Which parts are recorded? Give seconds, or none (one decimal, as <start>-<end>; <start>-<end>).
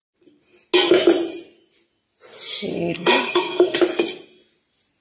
0.0-2.7; 3.8-5.0